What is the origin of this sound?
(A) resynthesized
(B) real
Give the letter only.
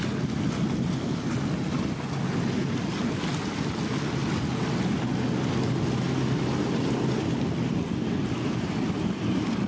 B